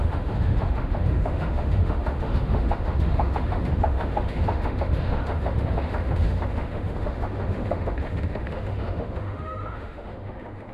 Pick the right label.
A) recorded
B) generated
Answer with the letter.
B